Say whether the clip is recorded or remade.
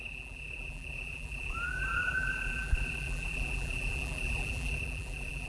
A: remade